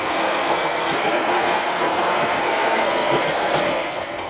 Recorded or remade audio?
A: remade